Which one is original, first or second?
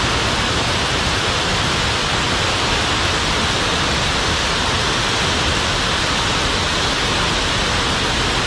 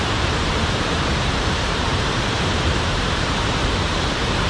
first